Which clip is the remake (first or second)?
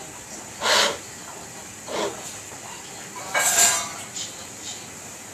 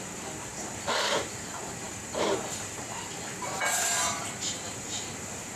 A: second